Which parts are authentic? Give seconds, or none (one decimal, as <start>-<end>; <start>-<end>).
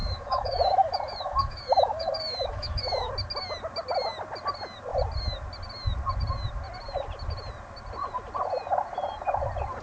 3.1-9.8